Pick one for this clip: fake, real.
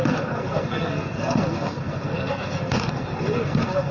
fake